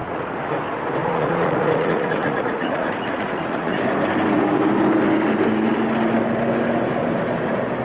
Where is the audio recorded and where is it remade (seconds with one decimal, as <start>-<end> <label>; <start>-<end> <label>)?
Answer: 0.0-0.5 remade; 0.5-1.0 recorded; 1.0-3.8 remade; 3.8-7.8 recorded

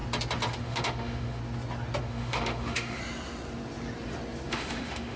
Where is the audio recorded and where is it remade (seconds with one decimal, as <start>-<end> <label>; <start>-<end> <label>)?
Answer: 0.0-0.6 recorded; 0.6-1.4 remade; 1.4-2.0 recorded; 2.0-3.0 remade; 3.0-4.5 recorded; 4.5-5.2 remade

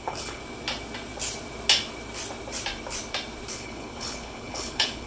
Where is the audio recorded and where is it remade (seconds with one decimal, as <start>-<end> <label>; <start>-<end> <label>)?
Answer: 0.0-0.4 remade; 0.4-3.5 recorded; 3.5-5.1 remade

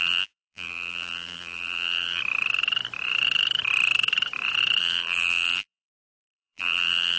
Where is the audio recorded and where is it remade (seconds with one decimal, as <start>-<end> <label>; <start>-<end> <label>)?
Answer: 0.0-2.2 remade; 2.2-4.8 recorded; 4.8-7.2 remade

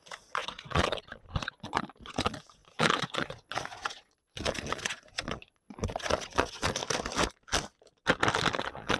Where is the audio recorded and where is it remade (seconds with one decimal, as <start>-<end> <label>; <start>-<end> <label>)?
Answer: 0.0-6.8 remade; 6.8-8.6 recorded; 8.6-9.0 remade